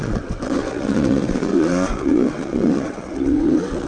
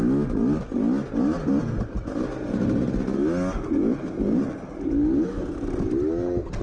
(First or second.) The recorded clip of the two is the second